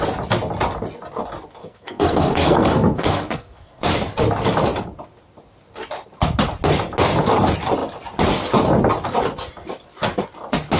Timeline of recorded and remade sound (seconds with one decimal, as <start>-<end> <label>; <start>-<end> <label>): 0.0-1.6 recorded; 1.6-3.9 remade; 3.9-10.8 recorded

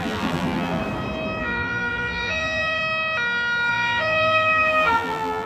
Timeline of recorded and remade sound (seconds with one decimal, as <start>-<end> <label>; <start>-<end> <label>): 0.0-0.8 remade; 0.8-1.4 recorded; 1.4-2.8 remade; 2.8-3.7 recorded; 3.7-5.5 remade